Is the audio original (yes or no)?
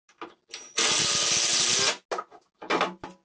yes